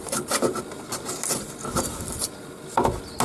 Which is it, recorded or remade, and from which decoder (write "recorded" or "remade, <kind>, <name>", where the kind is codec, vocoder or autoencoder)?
recorded